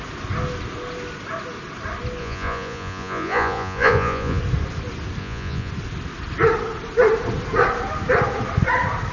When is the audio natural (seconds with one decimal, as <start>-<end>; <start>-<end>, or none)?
0.0-2.2; 4.4-5.2; 5.7-9.1